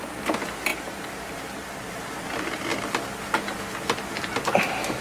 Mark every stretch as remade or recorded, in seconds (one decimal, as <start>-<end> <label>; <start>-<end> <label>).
0.0-5.0 recorded